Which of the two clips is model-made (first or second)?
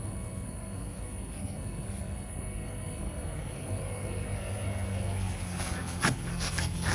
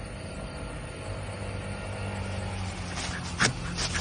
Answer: first